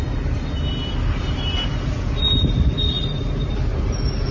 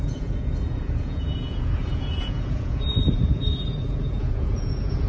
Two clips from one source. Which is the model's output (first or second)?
second